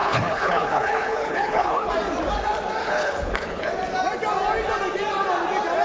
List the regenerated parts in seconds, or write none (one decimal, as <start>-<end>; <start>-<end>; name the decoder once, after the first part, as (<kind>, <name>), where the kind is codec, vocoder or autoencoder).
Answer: 0.0-1.9 (codec, HILCodec); 2.8-3.7